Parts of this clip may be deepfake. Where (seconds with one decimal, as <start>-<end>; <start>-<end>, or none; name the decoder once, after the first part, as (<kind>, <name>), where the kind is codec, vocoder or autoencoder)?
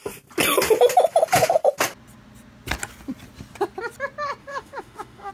4.4-5.3 (autoencoder, DAC-VAE)